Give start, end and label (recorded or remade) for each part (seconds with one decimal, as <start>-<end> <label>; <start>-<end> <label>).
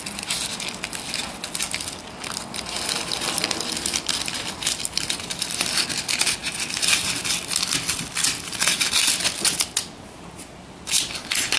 0.0-11.6 recorded